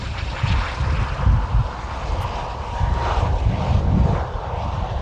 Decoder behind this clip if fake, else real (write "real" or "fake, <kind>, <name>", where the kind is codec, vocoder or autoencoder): real